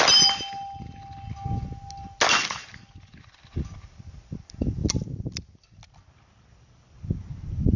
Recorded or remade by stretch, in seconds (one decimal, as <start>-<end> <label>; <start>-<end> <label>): 0.0-7.8 recorded